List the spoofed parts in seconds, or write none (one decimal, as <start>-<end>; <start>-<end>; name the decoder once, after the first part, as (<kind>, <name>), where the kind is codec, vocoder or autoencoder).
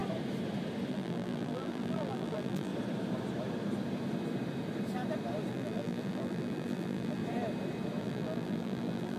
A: 0.9-2.7 (vocoder, BigVGAN v2); 5.5-7.2; 8.0-9.2